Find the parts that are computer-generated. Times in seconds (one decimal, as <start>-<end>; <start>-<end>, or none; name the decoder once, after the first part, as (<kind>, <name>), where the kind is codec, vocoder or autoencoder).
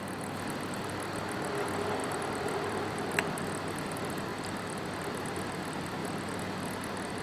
2.0-3.4 (vocoder, BigVGAN v2); 4.3-5.2; 6.0-7.2